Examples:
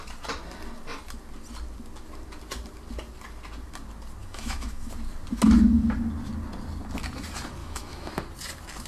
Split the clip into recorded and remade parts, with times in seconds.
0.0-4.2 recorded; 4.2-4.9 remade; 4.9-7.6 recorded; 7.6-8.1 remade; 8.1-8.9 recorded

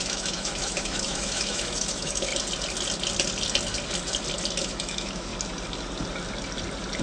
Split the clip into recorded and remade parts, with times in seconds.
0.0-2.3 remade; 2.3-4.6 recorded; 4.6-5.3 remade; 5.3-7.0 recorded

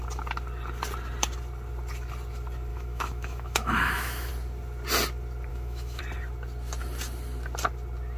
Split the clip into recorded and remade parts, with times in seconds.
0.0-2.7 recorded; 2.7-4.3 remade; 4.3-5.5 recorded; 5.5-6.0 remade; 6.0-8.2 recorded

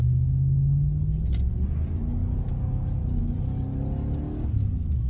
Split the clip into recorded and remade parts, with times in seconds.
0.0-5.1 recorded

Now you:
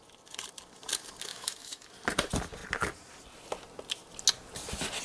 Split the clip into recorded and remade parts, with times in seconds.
0.0-1.3 recorded; 1.3-1.9 remade; 1.9-5.0 recorded

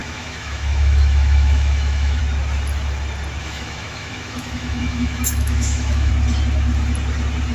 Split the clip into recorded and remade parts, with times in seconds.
0.0-2.2 remade; 2.2-3.4 recorded; 3.4-6.1 remade; 6.1-7.5 recorded

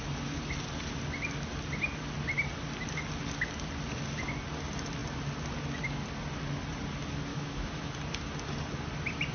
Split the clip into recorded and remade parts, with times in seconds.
0.0-7.3 recorded; 7.3-7.9 remade; 7.9-9.3 recorded